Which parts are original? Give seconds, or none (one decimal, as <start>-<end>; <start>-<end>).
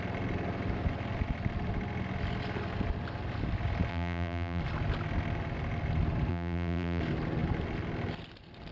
0.0-3.9; 4.6-6.3; 7.0-8.7